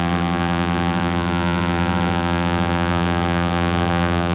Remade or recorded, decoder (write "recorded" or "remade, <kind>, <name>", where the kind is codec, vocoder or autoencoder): remade, vocoder, BigVGAN v2